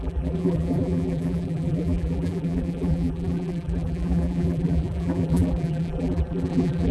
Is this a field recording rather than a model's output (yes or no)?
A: no